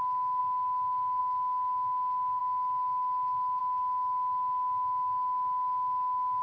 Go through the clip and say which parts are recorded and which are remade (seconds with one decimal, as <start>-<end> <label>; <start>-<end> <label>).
0.0-6.4 recorded